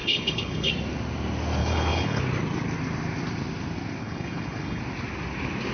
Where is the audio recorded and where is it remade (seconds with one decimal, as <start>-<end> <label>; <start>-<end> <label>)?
0.0-0.7 remade; 0.7-1.6 recorded; 1.6-2.2 remade; 2.2-4.0 recorded; 4.0-4.8 remade; 4.8-5.7 recorded